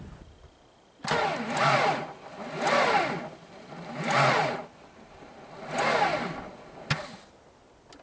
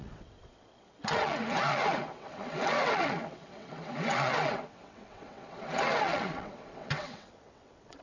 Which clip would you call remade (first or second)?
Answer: second